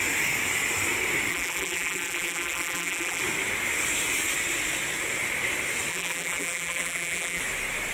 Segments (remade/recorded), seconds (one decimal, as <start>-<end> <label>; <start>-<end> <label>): 0.0-1.3 recorded; 1.3-3.2 remade; 3.2-5.9 recorded; 5.9-7.4 remade; 7.4-7.9 recorded